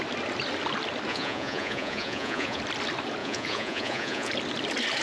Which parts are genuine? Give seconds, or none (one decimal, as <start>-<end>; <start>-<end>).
0.0-1.1; 2.6-3.2; 4.3-5.0